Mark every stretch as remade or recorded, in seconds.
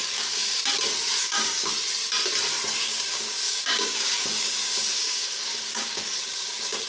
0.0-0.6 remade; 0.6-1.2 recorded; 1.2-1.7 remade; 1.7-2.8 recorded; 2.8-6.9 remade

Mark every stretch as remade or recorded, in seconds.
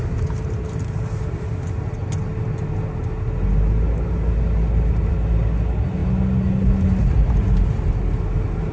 0.0-8.7 recorded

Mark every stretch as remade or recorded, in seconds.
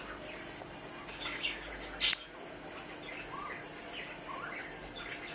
0.0-1.1 recorded; 1.1-1.7 remade; 1.7-5.3 recorded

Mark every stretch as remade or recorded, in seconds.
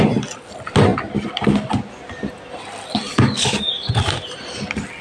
0.0-3.1 recorded; 3.1-3.9 remade; 3.9-5.0 recorded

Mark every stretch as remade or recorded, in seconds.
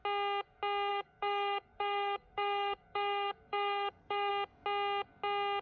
0.0-0.9 recorded; 0.9-4.3 remade; 4.3-5.6 recorded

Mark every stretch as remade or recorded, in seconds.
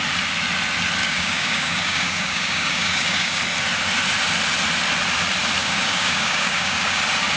0.0-1.0 recorded; 1.0-3.4 remade; 3.4-5.6 recorded; 5.6-7.0 remade; 7.0-7.4 recorded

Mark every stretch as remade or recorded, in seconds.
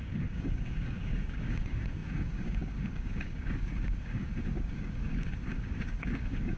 0.0-6.6 remade